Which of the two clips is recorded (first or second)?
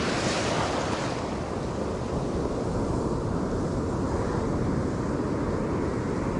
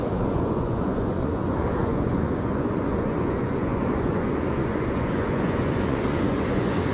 first